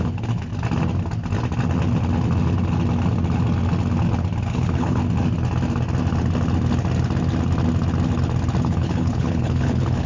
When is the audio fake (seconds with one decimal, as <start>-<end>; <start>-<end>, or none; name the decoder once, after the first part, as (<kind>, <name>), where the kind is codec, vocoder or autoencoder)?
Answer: 0.0-0.5 (codec, HILCodec); 4.4-5.0; 8.6-10.1